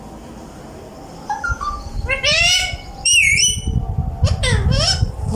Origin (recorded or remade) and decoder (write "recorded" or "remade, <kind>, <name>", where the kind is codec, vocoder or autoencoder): recorded